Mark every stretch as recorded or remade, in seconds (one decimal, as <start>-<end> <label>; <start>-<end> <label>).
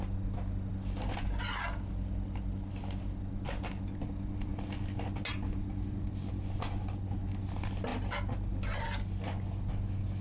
0.0-10.2 recorded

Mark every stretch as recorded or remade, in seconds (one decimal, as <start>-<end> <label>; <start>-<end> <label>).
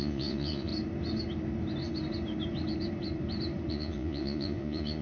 0.0-0.7 remade; 0.7-3.7 recorded; 3.7-5.0 remade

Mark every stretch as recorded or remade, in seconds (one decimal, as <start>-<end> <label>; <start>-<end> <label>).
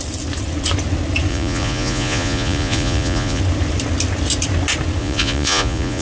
0.0-1.3 recorded; 1.3-3.4 remade; 3.4-5.0 recorded; 5.0-6.0 remade